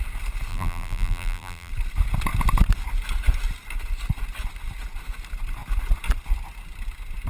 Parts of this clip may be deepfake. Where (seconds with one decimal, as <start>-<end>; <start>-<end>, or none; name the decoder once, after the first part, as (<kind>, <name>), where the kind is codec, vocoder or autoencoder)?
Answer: 0.5-1.7 (vocoder, BigVGAN v2)

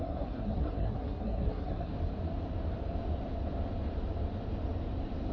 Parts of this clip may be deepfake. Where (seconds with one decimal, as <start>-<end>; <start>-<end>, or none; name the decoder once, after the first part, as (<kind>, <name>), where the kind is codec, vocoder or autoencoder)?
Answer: 0.0-1.9 (codec, SNAC)

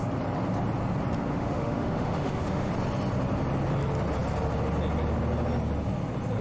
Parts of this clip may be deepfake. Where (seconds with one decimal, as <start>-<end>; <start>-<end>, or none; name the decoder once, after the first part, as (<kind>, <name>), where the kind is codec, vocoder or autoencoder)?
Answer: 1.3-2.7 (autoencoder, DAC-VAE)

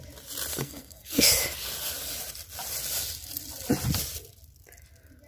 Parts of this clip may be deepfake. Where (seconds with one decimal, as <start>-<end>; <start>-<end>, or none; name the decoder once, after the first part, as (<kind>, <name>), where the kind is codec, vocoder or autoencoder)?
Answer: 0.5-1.3 (codec, SNAC)

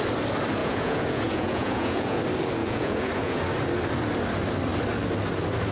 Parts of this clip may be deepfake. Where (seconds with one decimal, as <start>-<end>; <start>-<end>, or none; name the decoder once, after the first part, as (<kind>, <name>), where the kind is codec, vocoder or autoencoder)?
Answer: 0.6-2.2 (vocoder, Vocos); 2.6-3.4